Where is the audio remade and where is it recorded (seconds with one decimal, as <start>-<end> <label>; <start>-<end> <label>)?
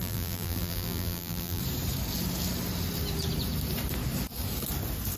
0.0-1.6 remade; 1.6-5.2 recorded